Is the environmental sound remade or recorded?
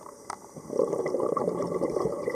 recorded